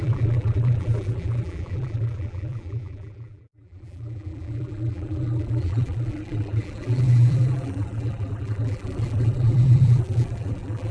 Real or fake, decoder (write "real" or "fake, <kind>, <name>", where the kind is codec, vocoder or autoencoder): fake, vocoder, BigVGAN v2